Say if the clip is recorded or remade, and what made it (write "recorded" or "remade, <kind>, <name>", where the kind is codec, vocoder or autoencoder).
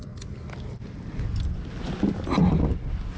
recorded